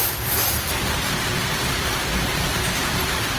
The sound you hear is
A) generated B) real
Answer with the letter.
A